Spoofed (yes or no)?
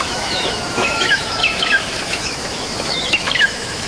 yes